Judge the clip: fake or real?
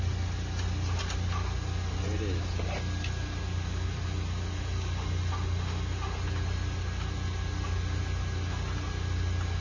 real